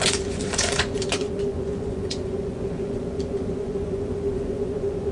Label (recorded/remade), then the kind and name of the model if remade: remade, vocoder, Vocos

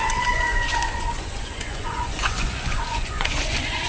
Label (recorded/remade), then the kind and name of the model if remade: remade, vocoder, Vocos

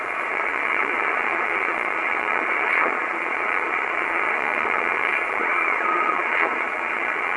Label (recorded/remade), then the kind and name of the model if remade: remade, vocoder, Vocos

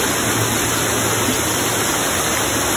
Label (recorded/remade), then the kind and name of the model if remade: recorded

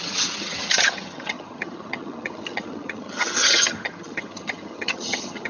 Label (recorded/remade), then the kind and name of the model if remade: remade, vocoder, HiFi-GAN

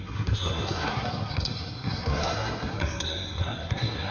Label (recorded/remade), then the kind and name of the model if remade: remade, codec, SNAC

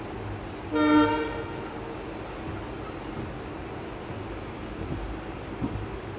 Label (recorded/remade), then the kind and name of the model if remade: recorded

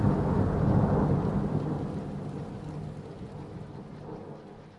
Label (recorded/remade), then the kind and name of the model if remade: recorded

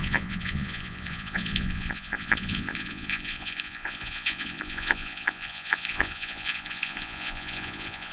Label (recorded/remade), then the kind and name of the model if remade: remade, vocoder, Vocos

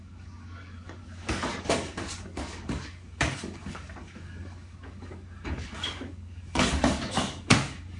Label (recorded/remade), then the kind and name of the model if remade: remade, codec, DAC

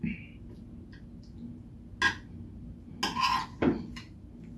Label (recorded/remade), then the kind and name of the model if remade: recorded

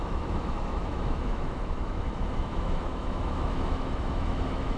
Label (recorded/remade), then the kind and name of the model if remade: remade, autoencoder, DAC-VAE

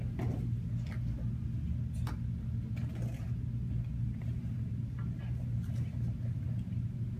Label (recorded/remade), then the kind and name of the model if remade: recorded